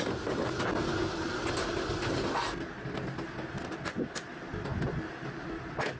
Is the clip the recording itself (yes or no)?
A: yes